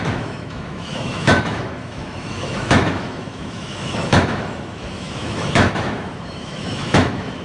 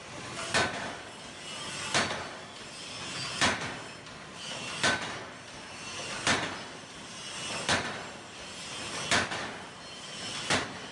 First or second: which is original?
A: second